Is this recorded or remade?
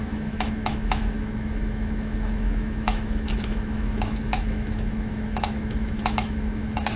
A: remade